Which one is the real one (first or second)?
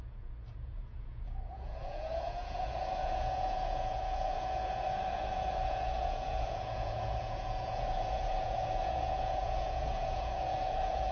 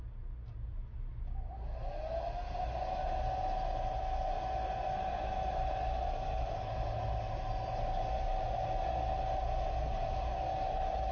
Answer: second